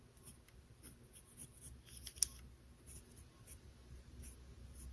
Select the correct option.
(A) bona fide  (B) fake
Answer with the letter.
A